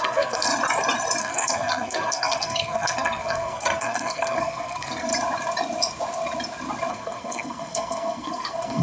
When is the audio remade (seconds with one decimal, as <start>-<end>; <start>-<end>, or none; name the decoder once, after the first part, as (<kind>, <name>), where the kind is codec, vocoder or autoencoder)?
0.0-0.5 (codec, SNAC); 1.2-5.1; 6.9-8.8